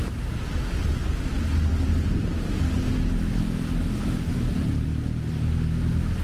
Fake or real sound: real